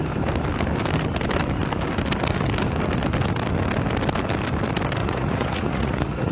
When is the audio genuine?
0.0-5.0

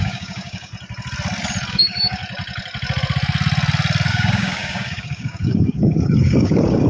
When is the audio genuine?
0.7-1.7; 2.2-4.1